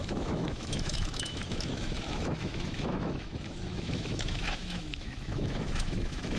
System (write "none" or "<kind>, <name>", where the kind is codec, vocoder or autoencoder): autoencoder, DAC-VAE